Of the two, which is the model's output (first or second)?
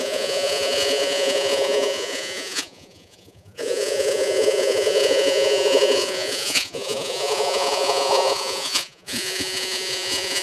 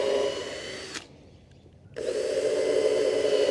first